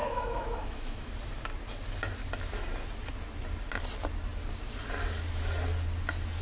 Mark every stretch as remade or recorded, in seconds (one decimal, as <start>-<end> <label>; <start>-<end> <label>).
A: 0.0-1.1 remade; 1.1-6.4 recorded